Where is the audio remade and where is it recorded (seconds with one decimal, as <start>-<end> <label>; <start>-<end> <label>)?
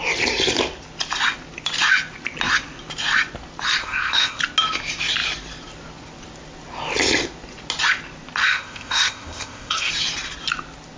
0.0-3.8 recorded; 3.8-4.4 remade; 4.4-8.4 recorded; 8.4-9.9 remade; 9.9-11.0 recorded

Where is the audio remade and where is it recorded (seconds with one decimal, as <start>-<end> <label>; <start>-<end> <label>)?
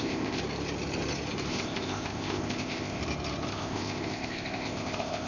0.0-0.4 remade; 0.4-1.5 recorded; 1.5-3.0 remade; 3.0-3.5 recorded; 3.5-5.3 remade